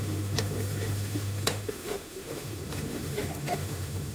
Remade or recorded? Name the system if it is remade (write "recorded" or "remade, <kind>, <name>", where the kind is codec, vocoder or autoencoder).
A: remade, autoencoder, DAC-VAE